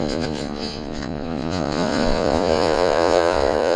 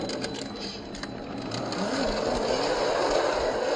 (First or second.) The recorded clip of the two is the second